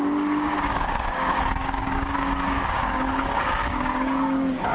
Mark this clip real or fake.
fake